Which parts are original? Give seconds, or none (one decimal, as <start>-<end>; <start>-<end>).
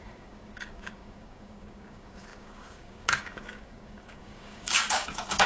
none